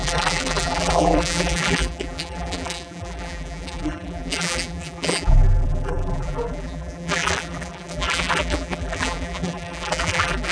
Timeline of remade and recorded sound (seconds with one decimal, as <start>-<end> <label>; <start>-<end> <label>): 0.0-10.5 remade